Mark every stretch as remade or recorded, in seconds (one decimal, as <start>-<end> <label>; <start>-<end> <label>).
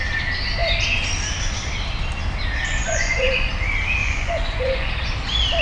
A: 0.0-2.7 recorded; 2.7-3.5 remade; 3.5-4.0 recorded; 4.0-4.9 remade; 4.9-5.6 recorded